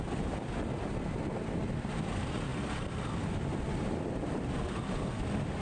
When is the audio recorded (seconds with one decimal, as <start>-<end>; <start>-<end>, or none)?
0.0-5.6